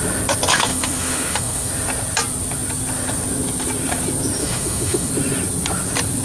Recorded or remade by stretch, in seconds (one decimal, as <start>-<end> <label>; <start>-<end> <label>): 0.0-0.5 recorded; 0.5-1.7 remade; 1.7-4.4 recorded; 4.4-5.1 remade; 5.1-6.2 recorded